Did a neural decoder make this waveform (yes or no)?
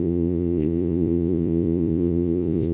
yes